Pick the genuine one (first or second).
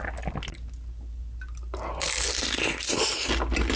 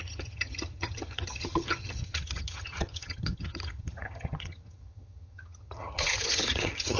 first